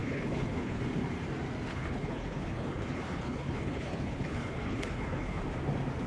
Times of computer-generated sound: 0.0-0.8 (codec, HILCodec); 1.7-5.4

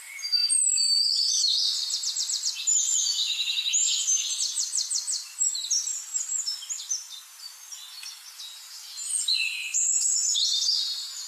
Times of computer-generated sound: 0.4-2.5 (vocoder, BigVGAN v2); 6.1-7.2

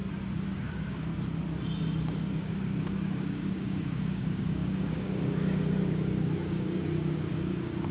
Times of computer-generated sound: 0.6-1.1 (codec, DAC); 2.0-7.9

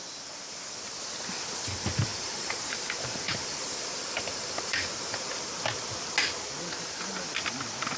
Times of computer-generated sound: 2.1-5.4 (vocoder, BigVGAN v2)

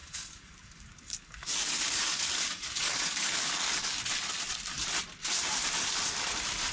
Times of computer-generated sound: 0.0-4.0 (codec, DAC)

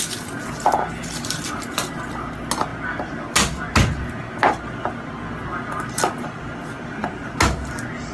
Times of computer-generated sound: none